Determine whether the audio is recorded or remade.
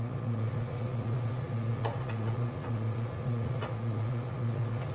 remade